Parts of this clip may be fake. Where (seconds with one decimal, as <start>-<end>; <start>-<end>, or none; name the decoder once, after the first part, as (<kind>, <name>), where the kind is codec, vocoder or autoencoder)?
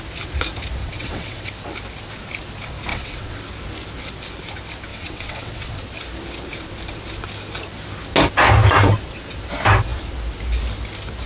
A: 0.8-1.5 (vocoder, WaveNeXt); 2.9-3.4; 4.9-5.8